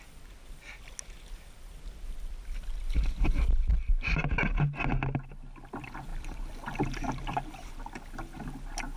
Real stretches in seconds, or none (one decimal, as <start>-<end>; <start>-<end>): 0.0-3.7; 4.3-6.1; 7.7-9.0